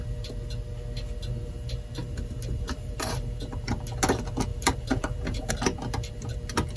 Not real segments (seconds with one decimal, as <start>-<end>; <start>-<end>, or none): 2.0-3.8; 4.5-5.5